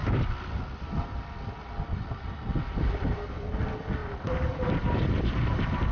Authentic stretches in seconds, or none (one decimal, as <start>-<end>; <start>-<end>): 0.0-5.9